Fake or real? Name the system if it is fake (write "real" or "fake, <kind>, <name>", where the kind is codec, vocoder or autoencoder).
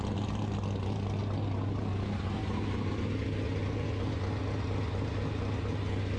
real